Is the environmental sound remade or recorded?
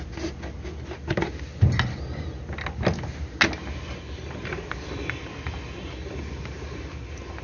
recorded